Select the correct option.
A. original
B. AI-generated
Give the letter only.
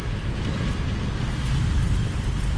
A